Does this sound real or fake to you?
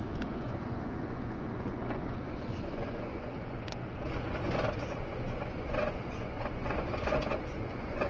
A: fake